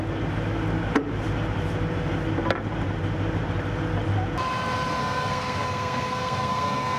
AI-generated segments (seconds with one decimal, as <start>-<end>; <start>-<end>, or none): 5.0-7.0